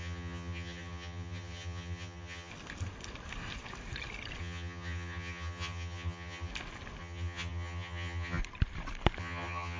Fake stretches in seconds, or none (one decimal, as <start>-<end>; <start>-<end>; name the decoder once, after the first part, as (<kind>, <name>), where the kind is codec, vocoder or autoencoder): 0.0-2.5 (vocoder, HiFi-GAN); 4.4-6.5; 7.0-8.4; 9.2-9.8